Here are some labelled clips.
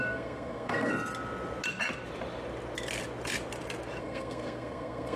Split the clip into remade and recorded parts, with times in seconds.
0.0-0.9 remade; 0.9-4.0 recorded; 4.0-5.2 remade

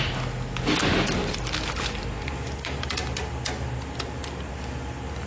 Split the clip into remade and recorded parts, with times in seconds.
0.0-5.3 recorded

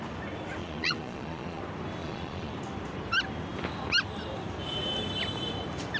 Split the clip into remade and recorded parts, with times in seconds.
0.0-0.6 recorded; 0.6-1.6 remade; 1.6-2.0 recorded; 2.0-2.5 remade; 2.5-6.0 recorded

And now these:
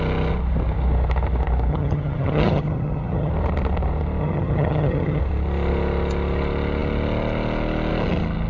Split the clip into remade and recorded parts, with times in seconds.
0.0-1.7 recorded; 1.7-3.3 remade; 3.3-4.2 recorded; 4.2-5.2 remade; 5.2-8.5 recorded